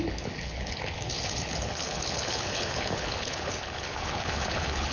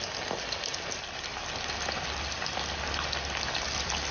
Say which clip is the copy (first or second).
first